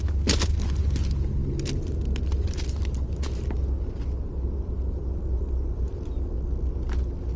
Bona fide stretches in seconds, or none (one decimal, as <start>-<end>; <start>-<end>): 0.0-7.4